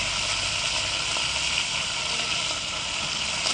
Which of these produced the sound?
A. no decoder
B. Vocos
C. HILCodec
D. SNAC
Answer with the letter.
A